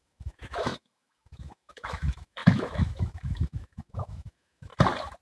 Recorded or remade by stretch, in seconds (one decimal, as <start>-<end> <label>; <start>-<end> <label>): 0.0-4.7 remade; 4.7-5.2 recorded